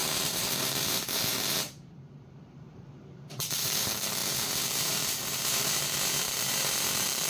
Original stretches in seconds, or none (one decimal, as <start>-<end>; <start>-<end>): none